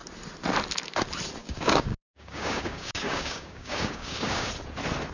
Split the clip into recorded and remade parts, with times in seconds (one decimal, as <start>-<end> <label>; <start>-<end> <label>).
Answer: 0.0-1.4 recorded; 1.4-4.5 remade; 4.5-5.1 recorded